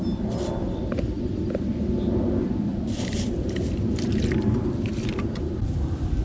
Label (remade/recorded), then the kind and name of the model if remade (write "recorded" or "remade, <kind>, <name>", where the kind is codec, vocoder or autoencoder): recorded